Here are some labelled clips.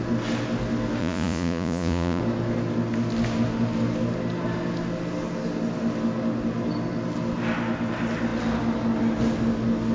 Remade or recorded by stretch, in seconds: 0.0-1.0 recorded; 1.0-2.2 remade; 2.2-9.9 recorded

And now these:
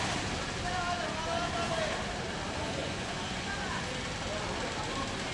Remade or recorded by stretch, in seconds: 0.0-2.8 recorded; 2.8-3.8 remade; 3.8-5.3 recorded

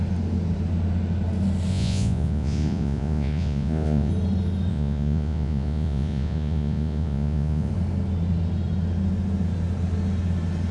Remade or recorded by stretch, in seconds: 0.0-1.7 recorded; 1.7-4.1 remade; 4.1-4.7 recorded; 4.7-7.7 remade; 7.7-10.7 recorded